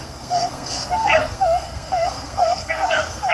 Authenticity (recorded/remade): remade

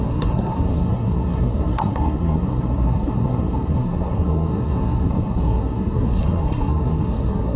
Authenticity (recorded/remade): remade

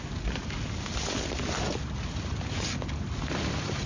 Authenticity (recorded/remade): recorded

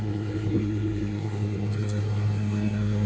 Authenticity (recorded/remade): remade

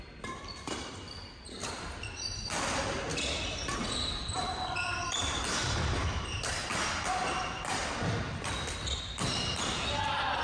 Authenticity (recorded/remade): recorded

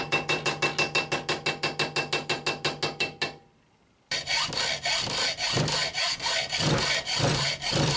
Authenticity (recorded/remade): recorded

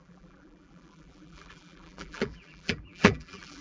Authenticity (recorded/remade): remade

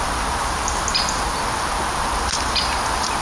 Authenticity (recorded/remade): recorded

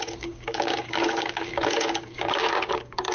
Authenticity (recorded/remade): remade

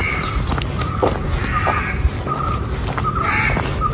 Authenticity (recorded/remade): recorded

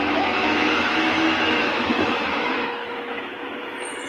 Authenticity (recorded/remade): remade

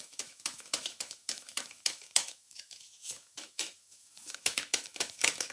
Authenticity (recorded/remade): remade